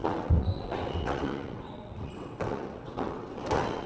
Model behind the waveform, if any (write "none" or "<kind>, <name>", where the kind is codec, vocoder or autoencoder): vocoder, WaveNeXt